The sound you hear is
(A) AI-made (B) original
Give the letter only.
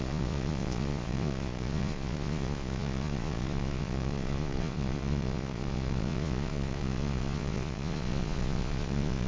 A